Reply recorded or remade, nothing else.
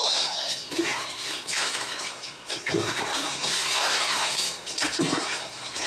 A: remade